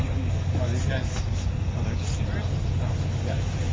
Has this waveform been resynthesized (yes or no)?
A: no